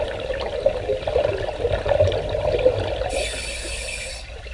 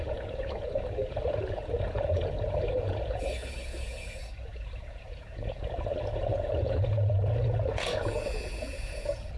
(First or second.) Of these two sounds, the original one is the first